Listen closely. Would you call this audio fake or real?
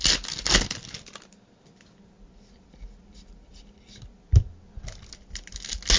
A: real